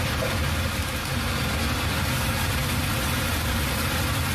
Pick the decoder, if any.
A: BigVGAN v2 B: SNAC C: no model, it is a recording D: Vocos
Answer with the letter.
C